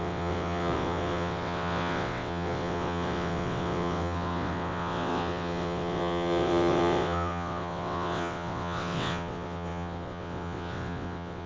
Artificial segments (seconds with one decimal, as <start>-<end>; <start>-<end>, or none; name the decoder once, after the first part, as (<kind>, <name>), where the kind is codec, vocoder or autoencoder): 0.0-11.5 (vocoder, WaveNeXt)